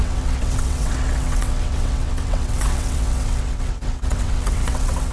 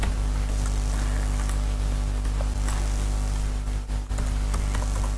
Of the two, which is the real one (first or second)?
second